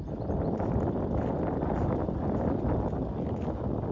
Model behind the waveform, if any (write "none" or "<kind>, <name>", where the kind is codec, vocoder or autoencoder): none